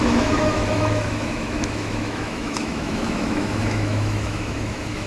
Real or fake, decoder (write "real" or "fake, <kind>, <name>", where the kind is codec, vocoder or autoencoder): fake, autoencoder, DAC-VAE